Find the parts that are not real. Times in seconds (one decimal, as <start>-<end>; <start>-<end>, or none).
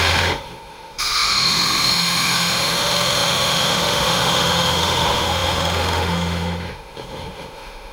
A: 0.0-7.9